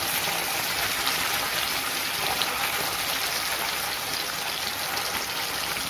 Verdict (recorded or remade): recorded